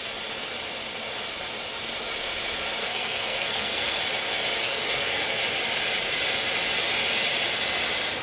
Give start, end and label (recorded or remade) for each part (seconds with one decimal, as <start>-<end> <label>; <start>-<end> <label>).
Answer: 0.0-2.8 recorded; 2.8-4.0 remade; 4.0-4.6 recorded; 4.6-5.4 remade; 5.4-8.2 recorded